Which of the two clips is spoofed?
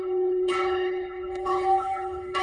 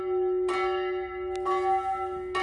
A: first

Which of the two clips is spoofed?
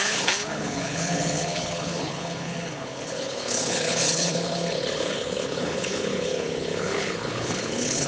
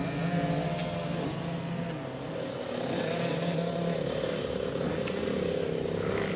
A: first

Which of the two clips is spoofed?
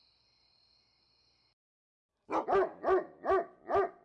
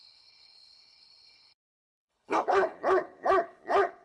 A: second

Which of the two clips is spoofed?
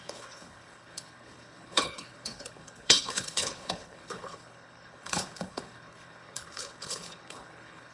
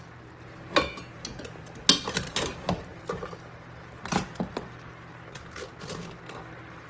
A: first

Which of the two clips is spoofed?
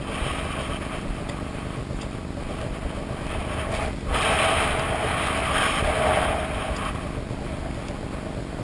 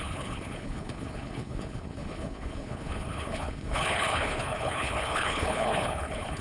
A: second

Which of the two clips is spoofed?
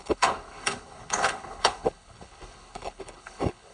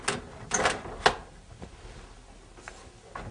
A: first